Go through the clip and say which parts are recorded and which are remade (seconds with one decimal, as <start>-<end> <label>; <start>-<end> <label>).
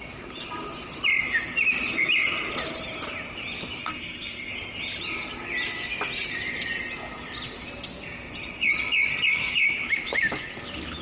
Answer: 0.0-3.8 recorded; 3.8-4.5 remade; 4.5-11.0 recorded